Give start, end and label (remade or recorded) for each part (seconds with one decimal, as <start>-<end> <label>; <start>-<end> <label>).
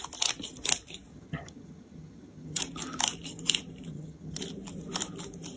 0.0-1.1 recorded; 1.1-2.6 remade; 2.6-3.9 recorded; 3.9-4.4 remade; 4.4-5.6 recorded